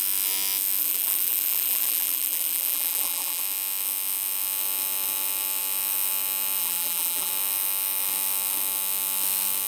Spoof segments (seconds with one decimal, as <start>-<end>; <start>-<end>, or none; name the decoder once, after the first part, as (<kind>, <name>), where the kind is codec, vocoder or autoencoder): 0.8-3.4 (vocoder, BigVGAN v2); 6.6-7.3

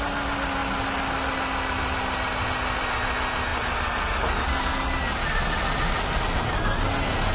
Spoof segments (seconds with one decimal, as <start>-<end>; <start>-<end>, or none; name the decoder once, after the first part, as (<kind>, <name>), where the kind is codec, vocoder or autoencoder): none

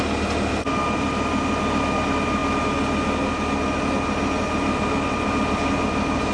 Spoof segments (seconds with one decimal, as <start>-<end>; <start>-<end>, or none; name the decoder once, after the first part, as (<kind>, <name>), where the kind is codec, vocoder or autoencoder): none